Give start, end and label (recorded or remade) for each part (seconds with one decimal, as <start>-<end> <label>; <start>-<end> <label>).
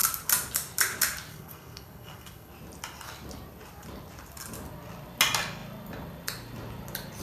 0.0-1.3 recorded; 1.3-2.5 remade; 2.5-7.2 recorded